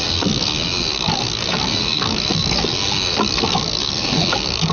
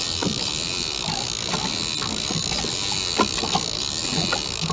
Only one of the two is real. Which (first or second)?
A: second